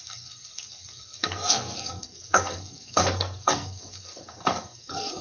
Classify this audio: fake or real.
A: fake